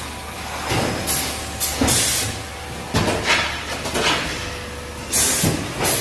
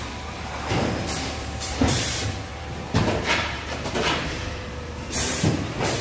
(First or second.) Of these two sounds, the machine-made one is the second